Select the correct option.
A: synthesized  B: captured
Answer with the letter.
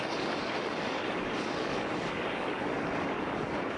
A